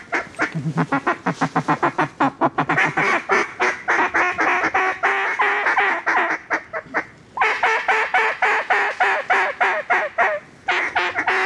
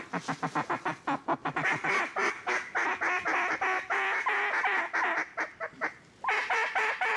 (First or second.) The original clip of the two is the first